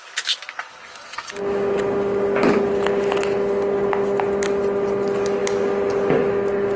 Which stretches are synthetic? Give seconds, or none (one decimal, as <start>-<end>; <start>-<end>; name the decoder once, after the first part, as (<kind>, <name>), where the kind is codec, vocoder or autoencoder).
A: 0.7-1.4 (codec, DAC)